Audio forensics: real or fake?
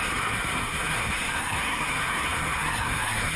fake